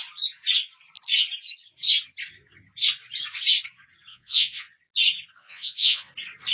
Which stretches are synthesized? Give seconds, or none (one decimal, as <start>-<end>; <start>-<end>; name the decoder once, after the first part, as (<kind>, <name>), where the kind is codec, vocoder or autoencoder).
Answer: 4.1-4.7 (vocoder, Vocos); 5.4-6.1